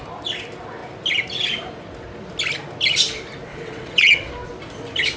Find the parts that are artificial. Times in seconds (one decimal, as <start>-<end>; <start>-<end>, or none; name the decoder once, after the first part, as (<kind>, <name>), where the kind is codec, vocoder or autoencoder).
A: 3.5-4.3 (vocoder, WaveNeXt)